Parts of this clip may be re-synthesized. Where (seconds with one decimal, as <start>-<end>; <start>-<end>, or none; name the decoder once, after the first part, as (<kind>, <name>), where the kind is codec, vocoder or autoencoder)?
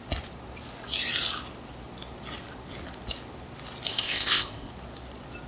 3.9-4.7 (codec, ZipCodec)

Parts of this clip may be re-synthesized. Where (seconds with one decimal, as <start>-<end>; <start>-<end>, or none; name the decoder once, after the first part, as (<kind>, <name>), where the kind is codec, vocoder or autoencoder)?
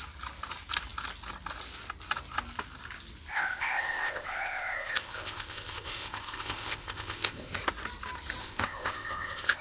3.3-7.6 (codec, ZipCodec); 8.4-9.6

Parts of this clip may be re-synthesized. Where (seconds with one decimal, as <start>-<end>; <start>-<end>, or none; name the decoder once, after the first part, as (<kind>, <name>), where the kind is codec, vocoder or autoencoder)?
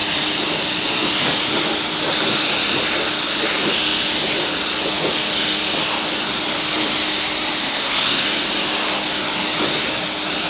7.6-8.2 (codec, ZipCodec)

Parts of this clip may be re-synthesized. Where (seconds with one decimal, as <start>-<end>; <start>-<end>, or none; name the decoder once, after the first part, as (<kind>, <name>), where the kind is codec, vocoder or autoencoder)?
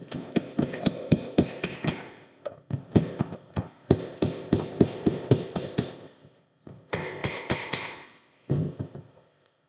0.0-9.7 (codec, ZipCodec)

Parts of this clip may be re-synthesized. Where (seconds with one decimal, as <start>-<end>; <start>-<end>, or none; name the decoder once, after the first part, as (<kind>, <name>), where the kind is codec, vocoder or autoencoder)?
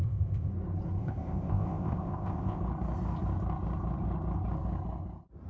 0.0-0.5 (codec, ZipCodec); 1.0-2.6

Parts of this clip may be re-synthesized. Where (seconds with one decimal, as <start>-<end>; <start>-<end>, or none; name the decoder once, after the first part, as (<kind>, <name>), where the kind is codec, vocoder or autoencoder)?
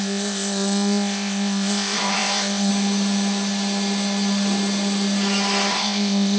0.0-2.7 (codec, ZipCodec); 5.7-6.4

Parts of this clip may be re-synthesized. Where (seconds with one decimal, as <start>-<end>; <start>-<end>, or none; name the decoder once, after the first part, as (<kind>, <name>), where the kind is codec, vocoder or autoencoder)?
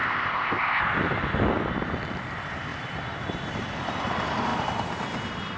0.0-0.8 (codec, ZipCodec)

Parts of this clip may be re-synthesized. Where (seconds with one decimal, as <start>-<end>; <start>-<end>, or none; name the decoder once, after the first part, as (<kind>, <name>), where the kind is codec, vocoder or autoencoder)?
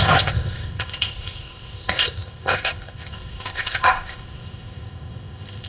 0.0-5.7 (codec, ZipCodec)